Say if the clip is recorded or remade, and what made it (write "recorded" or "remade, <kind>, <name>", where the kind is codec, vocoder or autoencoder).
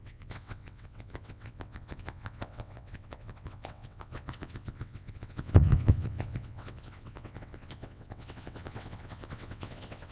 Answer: remade, vocoder, WaveNeXt